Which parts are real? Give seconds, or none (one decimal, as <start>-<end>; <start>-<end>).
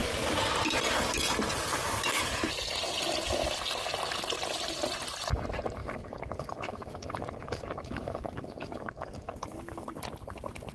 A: 0.0-1.7; 2.2-5.8; 10.0-10.7